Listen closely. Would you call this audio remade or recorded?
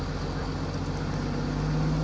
recorded